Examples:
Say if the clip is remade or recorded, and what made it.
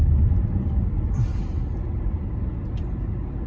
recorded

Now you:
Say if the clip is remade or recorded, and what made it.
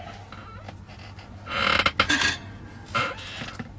recorded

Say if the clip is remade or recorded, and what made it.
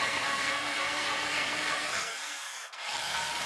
remade, codec, SNAC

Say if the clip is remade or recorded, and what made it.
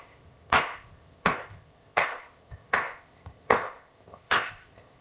remade, codec, ZipCodec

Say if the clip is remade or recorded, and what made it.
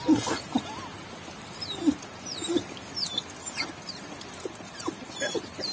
recorded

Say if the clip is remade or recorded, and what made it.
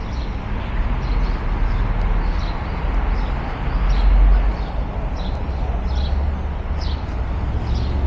recorded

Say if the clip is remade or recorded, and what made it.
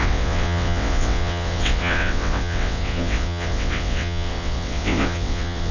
remade, vocoder, WaveNeXt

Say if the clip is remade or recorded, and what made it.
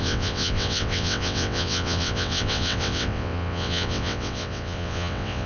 remade, vocoder, WaveNeXt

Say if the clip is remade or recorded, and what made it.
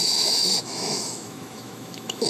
remade, autoencoder, DAC-VAE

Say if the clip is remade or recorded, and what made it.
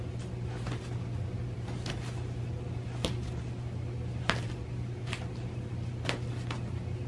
recorded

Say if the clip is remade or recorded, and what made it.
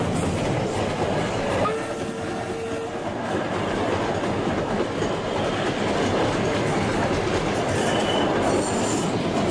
recorded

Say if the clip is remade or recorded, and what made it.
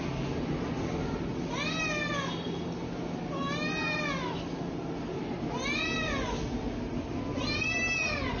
recorded